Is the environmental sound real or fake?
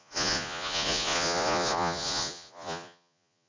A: fake